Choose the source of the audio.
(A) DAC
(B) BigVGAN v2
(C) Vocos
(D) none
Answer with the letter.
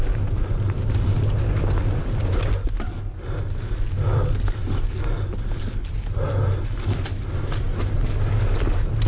D